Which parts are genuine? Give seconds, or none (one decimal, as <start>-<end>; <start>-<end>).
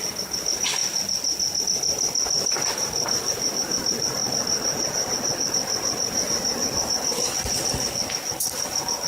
0.8-1.6; 4.2-5.5